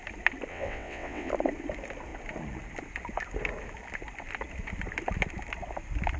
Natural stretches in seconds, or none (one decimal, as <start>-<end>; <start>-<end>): 0.0-0.5; 1.3-6.2

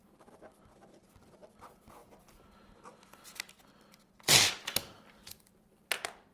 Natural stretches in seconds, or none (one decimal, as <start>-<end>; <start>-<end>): 0.0-6.3

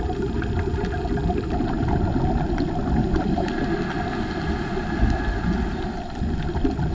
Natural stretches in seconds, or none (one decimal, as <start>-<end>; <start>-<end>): 0.0-6.9

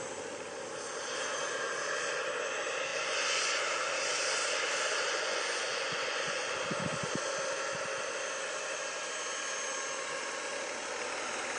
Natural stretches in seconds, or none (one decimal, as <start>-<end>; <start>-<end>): 0.0-2.9; 3.6-5.1; 6.5-11.6

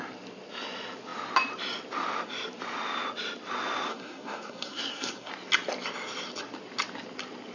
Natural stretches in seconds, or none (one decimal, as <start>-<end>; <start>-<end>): 0.0-3.9; 5.3-7.5

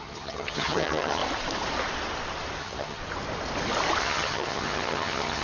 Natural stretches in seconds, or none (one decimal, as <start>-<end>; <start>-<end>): 1.2-2.6; 3.0-4.0